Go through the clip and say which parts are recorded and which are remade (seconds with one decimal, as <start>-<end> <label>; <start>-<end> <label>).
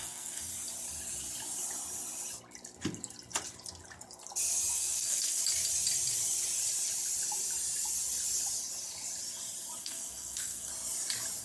0.0-0.5 remade; 0.5-4.7 recorded; 4.7-5.4 remade; 5.4-9.8 recorded; 9.8-10.7 remade; 10.7-11.4 recorded